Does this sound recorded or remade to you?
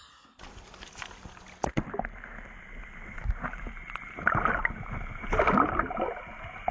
recorded